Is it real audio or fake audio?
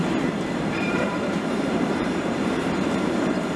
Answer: fake